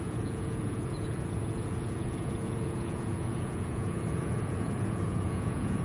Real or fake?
fake